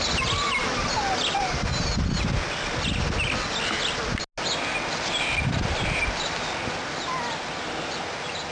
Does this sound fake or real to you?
real